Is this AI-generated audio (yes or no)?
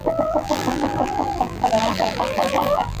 yes